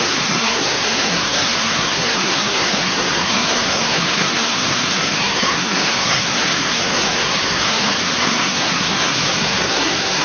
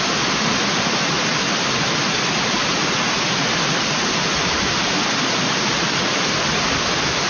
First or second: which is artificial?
first